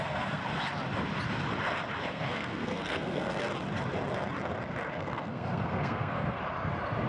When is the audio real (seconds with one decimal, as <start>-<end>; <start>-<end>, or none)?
0.4-2.1; 3.5-4.9; 6.4-7.1